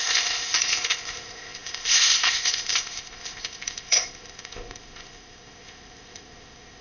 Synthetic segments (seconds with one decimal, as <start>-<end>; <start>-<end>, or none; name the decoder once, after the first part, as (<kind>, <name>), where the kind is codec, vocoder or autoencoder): 0.0-6.8 (codec, ZipCodec)